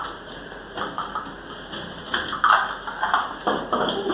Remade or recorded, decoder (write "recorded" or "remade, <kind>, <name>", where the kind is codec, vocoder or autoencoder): remade, vocoder, BigVGAN v2